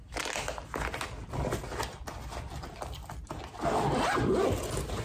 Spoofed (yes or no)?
no